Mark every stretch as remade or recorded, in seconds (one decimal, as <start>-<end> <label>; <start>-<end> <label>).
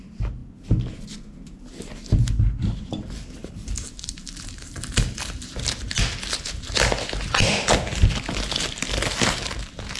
0.0-3.4 recorded; 3.4-5.5 remade; 5.5-10.0 recorded